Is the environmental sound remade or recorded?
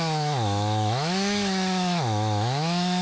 remade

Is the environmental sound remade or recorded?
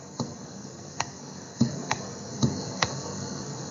remade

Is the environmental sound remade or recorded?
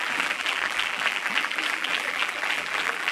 remade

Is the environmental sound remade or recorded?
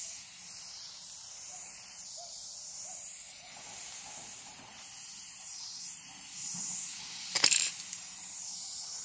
remade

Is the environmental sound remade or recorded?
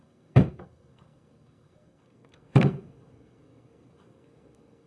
remade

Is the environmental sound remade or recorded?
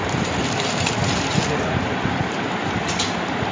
remade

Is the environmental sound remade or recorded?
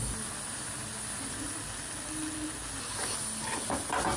recorded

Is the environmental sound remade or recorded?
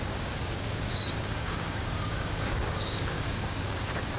remade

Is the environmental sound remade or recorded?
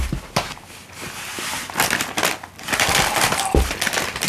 recorded